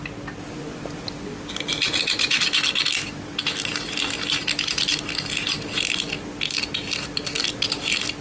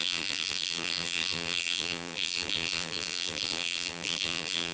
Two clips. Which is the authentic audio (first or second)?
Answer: first